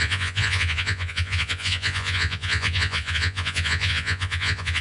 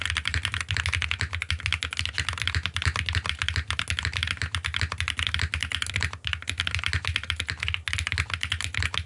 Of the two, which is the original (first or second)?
second